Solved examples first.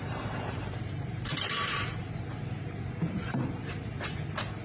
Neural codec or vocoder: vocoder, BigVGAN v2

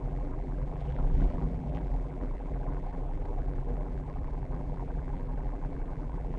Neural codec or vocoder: vocoder, BigVGAN v2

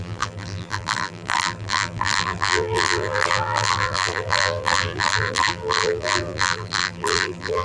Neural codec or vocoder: vocoder, BigVGAN v2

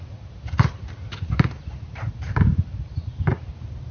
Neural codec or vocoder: vocoder, BigVGAN v2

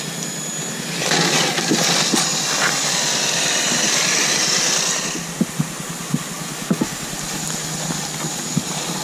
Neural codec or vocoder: none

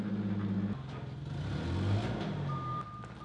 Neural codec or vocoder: none